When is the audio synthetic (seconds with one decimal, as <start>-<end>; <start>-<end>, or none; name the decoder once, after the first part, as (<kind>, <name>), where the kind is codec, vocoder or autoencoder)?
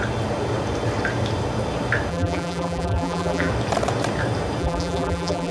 2.1-3.5 (vocoder, BigVGAN v2); 4.6-5.5